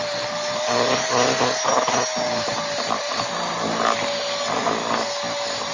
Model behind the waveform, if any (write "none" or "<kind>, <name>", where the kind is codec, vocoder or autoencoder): none